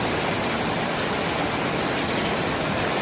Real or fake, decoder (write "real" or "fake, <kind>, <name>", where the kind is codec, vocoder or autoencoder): real